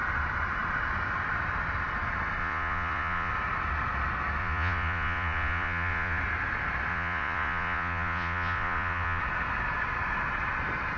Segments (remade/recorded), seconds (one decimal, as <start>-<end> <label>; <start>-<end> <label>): 0.0-2.4 recorded; 2.4-3.3 remade; 3.3-4.4 recorded; 4.4-6.2 remade; 6.2-6.9 recorded; 6.9-9.2 remade; 9.2-11.0 recorded